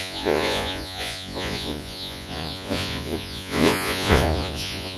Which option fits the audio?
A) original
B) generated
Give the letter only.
B